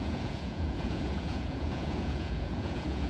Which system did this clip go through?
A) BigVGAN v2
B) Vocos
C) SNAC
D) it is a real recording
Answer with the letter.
B